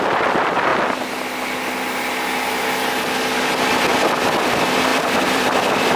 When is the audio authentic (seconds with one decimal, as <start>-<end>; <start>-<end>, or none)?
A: 0.7-4.3